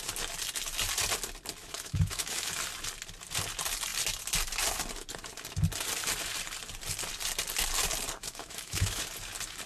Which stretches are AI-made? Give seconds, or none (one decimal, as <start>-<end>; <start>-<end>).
1.6-2.5; 8.2-9.0

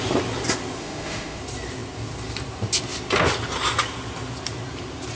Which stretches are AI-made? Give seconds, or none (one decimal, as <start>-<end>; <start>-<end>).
0.8-1.4

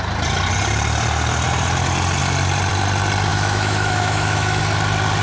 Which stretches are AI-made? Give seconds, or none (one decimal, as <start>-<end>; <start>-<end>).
3.3-4.6

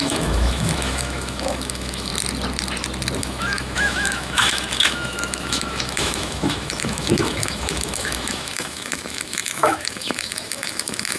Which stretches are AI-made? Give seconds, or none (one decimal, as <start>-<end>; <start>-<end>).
0.0-2.1; 3.2-11.2

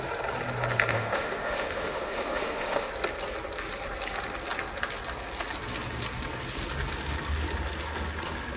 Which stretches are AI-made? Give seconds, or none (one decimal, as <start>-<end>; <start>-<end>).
0.9-2.9

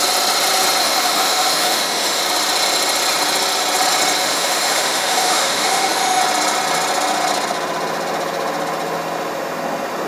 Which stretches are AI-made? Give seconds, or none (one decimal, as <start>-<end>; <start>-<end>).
0.8-2.2; 4.2-6.2

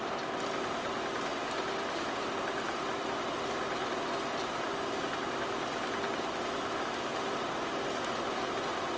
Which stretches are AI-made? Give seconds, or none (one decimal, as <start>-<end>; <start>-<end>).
none

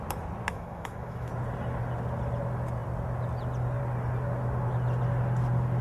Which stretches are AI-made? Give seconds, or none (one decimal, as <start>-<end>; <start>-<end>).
0.5-1.3